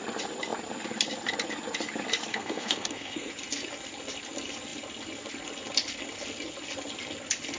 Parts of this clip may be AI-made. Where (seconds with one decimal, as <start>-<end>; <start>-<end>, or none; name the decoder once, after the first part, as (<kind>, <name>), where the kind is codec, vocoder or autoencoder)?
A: 2.3-3.3 (codec, SNAC)